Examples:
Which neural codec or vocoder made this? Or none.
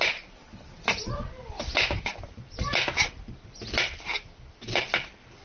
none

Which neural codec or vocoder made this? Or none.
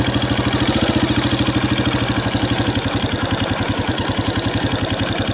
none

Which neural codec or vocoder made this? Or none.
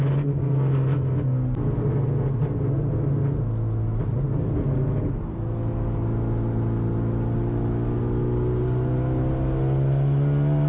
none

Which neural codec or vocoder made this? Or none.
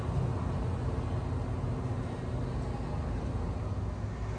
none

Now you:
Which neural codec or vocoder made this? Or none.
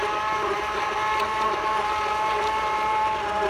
none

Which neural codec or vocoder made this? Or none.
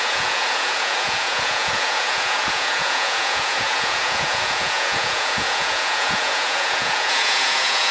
vocoder, Vocos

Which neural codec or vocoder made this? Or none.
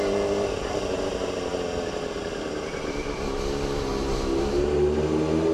none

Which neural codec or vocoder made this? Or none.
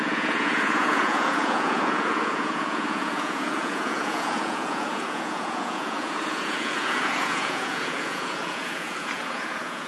vocoder, Vocos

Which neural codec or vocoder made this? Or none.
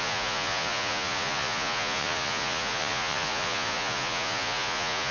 vocoder, Vocos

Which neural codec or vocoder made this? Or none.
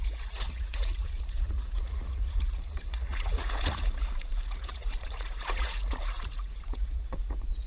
vocoder, Vocos